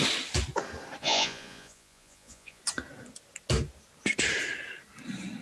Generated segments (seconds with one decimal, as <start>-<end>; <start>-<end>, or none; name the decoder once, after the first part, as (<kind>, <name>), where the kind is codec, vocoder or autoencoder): 1.0-2.6 (vocoder, Vocos)